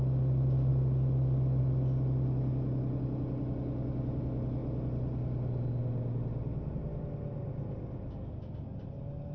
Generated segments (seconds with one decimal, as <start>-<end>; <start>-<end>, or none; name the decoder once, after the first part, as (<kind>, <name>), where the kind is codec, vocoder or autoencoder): none